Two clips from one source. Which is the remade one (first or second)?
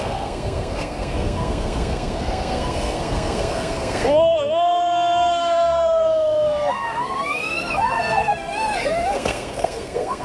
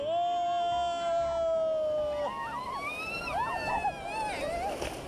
first